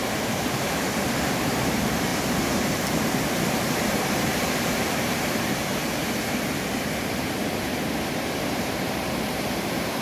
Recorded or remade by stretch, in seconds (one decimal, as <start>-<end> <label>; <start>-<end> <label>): 0.0-5.7 remade; 5.7-7.6 recorded; 7.6-10.0 remade